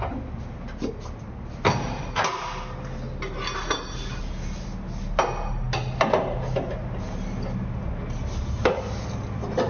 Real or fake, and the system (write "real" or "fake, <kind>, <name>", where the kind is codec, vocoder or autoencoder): real